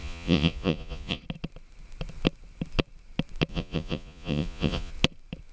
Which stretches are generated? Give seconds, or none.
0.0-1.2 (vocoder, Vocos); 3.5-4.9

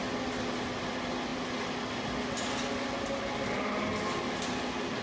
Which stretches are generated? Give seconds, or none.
none

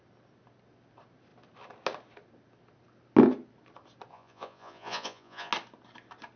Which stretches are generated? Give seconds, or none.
4.1-5.5 (vocoder, Vocos)

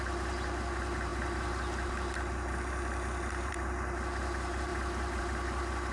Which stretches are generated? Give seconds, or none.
none

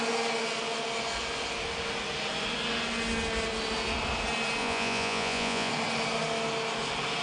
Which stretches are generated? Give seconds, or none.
4.6-5.7 (vocoder, Vocos)

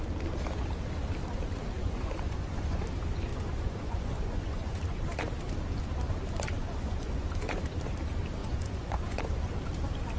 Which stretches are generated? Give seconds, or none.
1.8-2.8 (vocoder, Vocos); 3.3-4.8; 6.6-7.3; 8.4-9.2

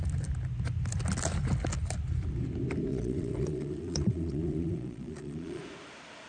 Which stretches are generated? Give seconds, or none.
2.9-5.6 (vocoder, Vocos)

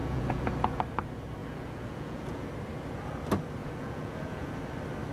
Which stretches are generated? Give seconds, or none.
0.0-0.8 (vocoder, Vocos); 1.4-2.5; 3.6-4.6